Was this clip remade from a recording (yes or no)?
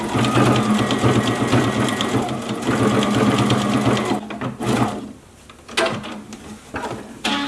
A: no